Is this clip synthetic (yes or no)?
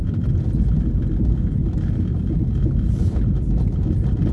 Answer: no